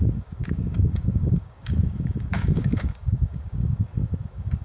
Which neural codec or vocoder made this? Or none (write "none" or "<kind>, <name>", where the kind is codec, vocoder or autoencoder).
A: codec, DAC